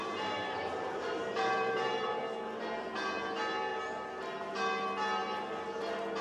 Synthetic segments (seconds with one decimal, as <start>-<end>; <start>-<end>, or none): 0.0-2.2; 3.7-4.2